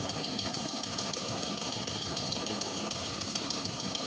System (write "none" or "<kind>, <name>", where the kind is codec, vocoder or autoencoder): codec, SNAC